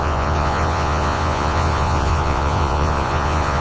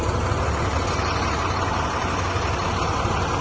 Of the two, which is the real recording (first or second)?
second